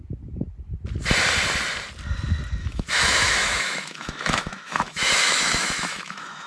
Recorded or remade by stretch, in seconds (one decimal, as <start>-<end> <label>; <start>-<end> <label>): 0.0-2.6 recorded; 2.6-6.5 remade